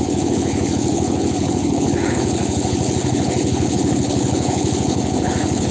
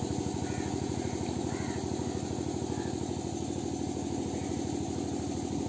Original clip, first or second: second